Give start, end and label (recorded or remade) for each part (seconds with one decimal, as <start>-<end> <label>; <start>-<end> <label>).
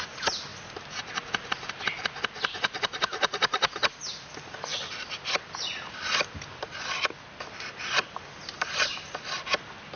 0.0-8.4 recorded; 8.4-8.9 remade; 8.9-10.0 recorded